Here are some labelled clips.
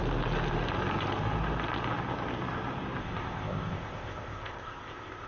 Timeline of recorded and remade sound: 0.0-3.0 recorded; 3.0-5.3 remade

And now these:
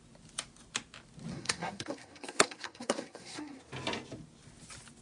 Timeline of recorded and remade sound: 0.0-1.3 recorded; 1.3-3.6 remade; 3.6-5.0 recorded

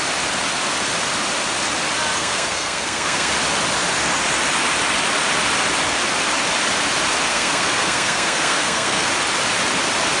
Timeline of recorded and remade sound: 0.0-2.2 recorded; 2.2-3.3 remade; 3.3-7.3 recorded; 7.3-9.1 remade; 9.1-10.2 recorded

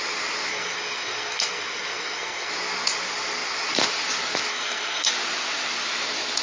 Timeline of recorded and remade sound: 0.0-0.5 recorded; 0.5-2.5 remade; 2.5-4.5 recorded; 4.5-5.1 remade; 5.1-6.4 recorded

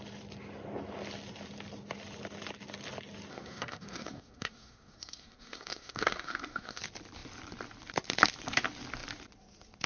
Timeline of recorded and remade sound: 0.0-3.3 recorded; 3.3-6.8 remade; 6.8-9.9 recorded

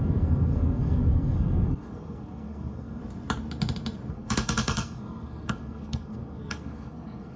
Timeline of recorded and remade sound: 0.0-3.0 remade; 3.0-4.1 recorded; 4.1-7.4 remade

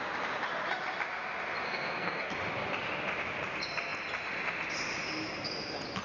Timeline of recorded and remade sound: 0.0-1.6 recorded; 1.6-2.3 remade; 2.3-6.0 recorded

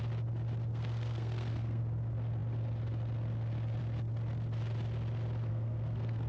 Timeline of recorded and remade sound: 0.0-0.7 recorded; 0.7-1.8 remade; 1.8-5.5 recorded; 5.5-6.3 remade